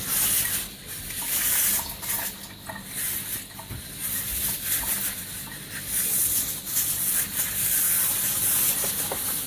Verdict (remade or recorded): recorded